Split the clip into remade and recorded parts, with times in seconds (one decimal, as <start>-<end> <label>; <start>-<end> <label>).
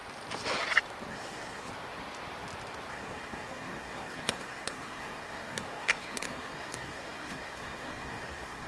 0.0-1.1 recorded; 1.1-1.7 remade; 1.7-2.9 recorded; 2.9-8.7 remade